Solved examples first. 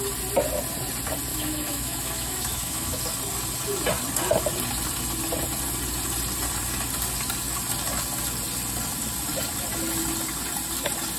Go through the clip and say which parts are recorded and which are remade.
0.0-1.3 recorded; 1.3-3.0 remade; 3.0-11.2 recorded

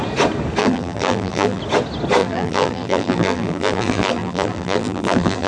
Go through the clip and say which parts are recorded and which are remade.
0.0-0.6 recorded; 0.6-1.6 remade; 1.6-2.2 recorded; 2.2-5.5 remade

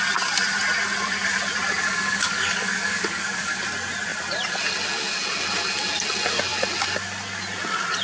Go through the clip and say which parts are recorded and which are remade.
0.0-1.8 recorded; 1.8-3.6 remade; 3.6-8.0 recorded

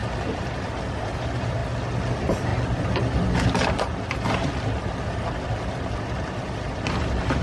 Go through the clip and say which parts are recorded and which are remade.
0.0-1.0 recorded; 1.0-1.6 remade; 1.6-2.1 recorded; 2.1-2.5 remade; 2.5-6.9 recorded; 6.9-7.4 remade